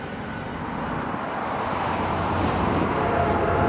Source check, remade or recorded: recorded